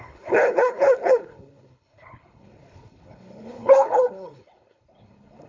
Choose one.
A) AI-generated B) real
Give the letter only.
A